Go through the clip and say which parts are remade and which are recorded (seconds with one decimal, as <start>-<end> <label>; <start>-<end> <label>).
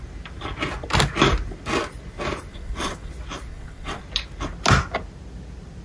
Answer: 0.0-2.5 recorded; 2.5-3.1 remade; 3.1-3.5 recorded; 3.5-4.0 remade; 4.0-5.8 recorded